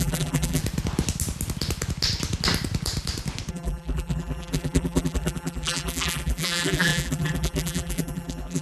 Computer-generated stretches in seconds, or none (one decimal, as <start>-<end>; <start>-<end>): 0.0-0.6; 3.5-8.6